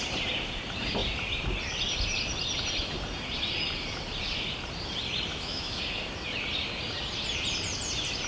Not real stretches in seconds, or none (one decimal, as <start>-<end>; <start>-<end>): 5.3-5.8